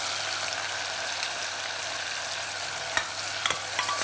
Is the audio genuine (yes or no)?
yes